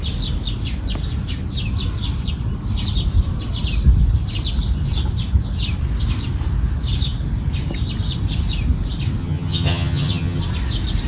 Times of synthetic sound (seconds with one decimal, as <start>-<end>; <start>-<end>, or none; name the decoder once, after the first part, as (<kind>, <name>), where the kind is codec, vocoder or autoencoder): 9.2-10.4 (vocoder, HiFi-GAN)